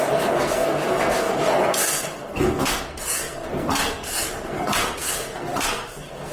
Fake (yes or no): yes